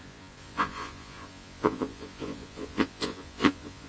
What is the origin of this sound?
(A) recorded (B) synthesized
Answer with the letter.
B